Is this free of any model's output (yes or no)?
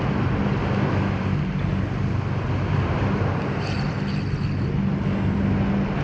yes